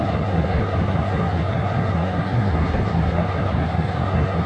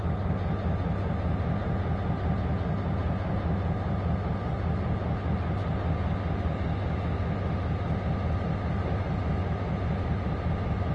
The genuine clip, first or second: second